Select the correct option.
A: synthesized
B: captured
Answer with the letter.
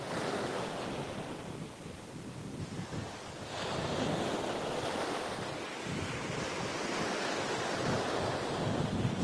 B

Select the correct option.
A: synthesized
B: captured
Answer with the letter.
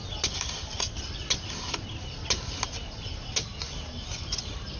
B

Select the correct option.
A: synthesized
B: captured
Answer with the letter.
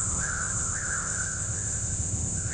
A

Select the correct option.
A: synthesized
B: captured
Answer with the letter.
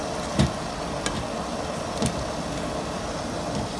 B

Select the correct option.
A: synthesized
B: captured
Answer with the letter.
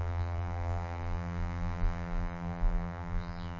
A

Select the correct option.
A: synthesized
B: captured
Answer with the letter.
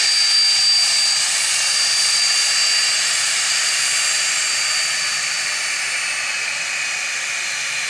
B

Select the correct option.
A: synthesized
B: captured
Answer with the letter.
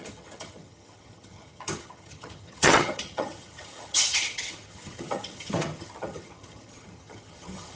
A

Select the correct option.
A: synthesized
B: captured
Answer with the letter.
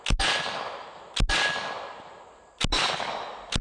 B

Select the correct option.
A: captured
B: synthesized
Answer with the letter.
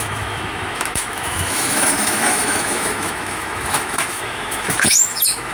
B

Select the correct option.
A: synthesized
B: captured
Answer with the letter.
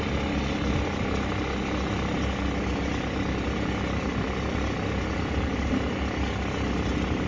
B